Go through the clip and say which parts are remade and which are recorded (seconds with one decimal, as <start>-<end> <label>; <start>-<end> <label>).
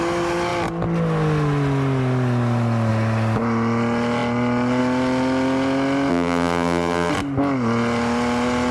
0.0-6.1 recorded; 6.1-7.1 remade; 7.1-8.7 recorded